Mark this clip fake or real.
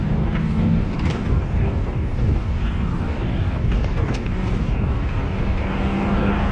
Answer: fake